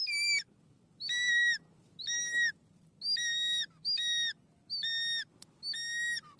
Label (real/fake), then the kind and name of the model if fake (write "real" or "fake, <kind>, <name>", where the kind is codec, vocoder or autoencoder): real